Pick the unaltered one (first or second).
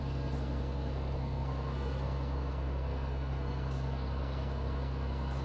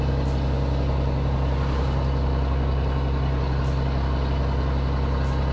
second